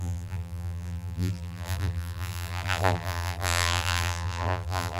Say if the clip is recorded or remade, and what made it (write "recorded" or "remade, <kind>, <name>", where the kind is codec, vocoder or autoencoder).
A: remade, vocoder, BigVGAN v2